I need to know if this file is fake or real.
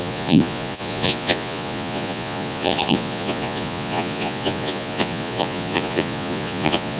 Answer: fake